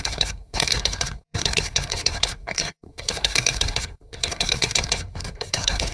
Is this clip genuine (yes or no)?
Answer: no